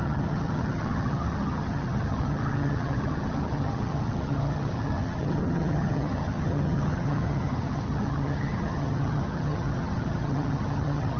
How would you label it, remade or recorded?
remade